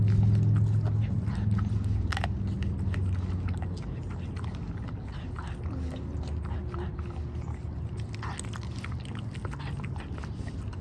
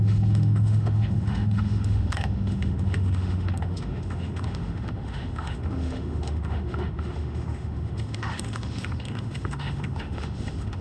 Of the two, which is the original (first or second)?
first